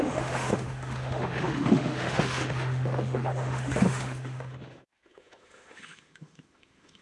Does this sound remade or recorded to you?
remade